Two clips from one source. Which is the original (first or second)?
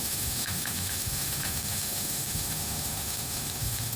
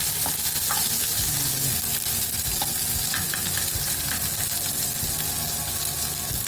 second